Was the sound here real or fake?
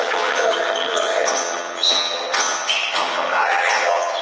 fake